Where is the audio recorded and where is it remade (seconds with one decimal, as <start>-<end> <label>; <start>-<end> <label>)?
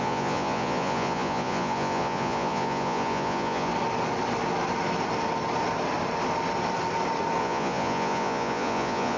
0.0-3.7 remade; 3.7-7.4 recorded; 7.4-9.2 remade